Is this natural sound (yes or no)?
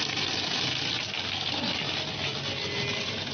yes